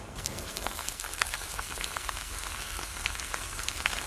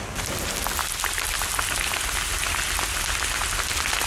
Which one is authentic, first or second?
second